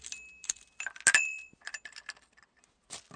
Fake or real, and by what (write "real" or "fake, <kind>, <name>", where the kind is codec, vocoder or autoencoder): real